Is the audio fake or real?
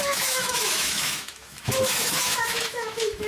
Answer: fake